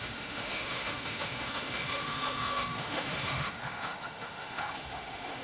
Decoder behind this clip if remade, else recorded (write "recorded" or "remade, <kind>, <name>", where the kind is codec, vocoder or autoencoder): remade, autoencoder, DAC-VAE